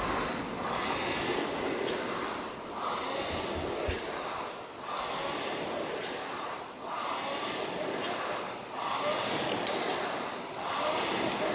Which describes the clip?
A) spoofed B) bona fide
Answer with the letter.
B